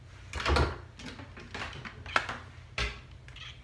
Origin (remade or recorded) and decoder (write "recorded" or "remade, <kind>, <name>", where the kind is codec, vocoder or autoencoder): recorded